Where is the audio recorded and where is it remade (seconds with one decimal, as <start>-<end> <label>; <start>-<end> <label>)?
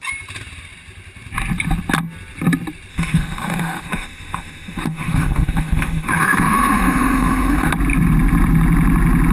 0.0-2.9 recorded; 2.9-7.7 remade; 7.7-9.3 recorded